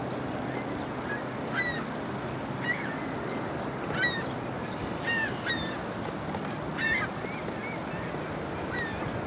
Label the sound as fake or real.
real